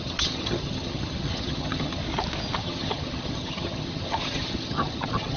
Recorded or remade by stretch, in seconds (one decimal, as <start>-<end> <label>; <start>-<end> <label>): 0.0-2.0 remade; 2.0-2.6 recorded; 2.6-5.4 remade